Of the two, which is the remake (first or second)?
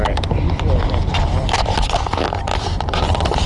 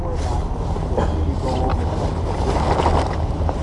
first